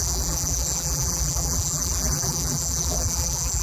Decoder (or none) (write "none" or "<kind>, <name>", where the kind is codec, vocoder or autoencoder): vocoder, BigVGAN v2